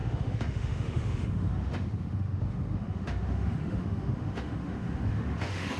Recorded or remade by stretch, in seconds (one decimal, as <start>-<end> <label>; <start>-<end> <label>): 0.0-5.8 remade